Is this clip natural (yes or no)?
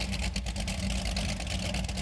yes